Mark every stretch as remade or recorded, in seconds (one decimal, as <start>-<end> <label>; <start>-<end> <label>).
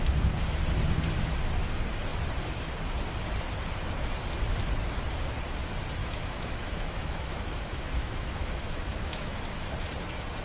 0.0-6.0 recorded; 6.0-9.4 remade; 9.4-10.4 recorded